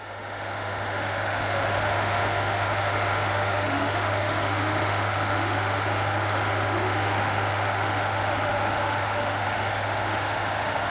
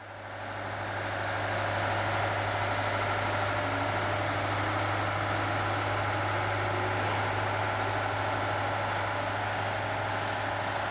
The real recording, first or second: second